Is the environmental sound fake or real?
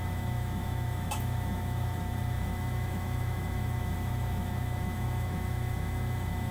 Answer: fake